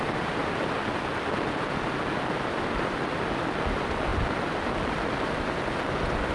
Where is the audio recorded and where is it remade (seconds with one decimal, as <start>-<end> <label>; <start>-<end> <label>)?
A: 0.0-6.3 recorded